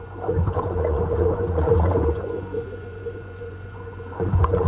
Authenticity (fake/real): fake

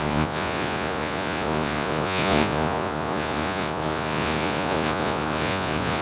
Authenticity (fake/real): fake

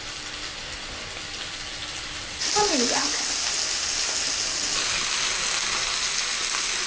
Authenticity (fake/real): real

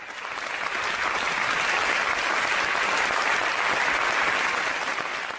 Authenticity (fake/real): real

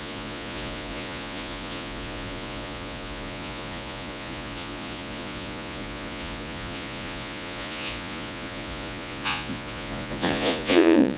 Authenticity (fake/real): fake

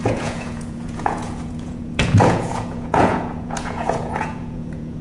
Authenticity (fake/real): fake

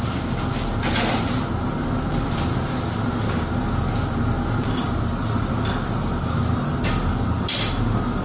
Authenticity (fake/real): real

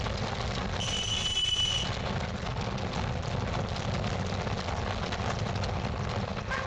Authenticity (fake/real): real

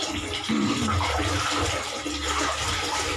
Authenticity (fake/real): real